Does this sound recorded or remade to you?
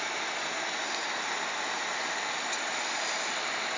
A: recorded